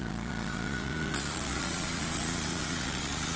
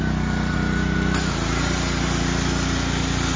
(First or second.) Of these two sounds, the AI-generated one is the first